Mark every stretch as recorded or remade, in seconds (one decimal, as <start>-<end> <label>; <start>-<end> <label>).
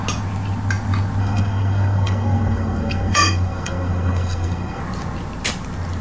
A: 0.0-1.2 recorded; 1.2-4.8 remade; 4.8-6.0 recorded